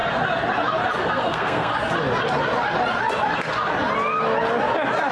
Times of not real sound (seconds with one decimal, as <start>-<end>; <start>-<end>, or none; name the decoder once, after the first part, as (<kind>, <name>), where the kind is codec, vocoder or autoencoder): 1.1-1.7 (codec, SNAC)